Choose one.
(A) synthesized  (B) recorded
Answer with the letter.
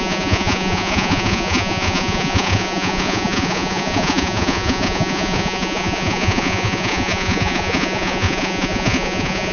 A